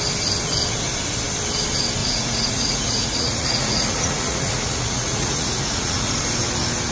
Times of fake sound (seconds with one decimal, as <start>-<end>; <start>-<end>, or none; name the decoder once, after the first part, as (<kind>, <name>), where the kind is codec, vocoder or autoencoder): 2.0-6.1 (vocoder, Vocos)